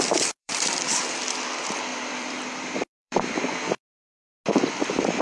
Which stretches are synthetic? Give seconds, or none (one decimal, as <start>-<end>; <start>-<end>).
0.4-0.9; 1.9-3.3